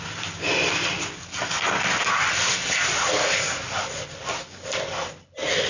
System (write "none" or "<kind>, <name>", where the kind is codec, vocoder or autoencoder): none